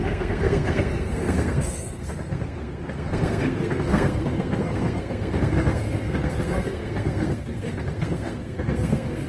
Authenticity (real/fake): fake